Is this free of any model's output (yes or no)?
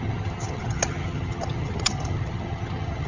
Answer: no